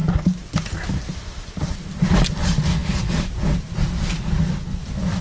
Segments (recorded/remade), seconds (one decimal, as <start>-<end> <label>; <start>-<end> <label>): 0.0-5.2 recorded